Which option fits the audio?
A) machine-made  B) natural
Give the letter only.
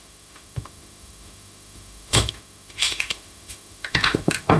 A